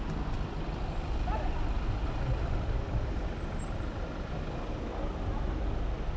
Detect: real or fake real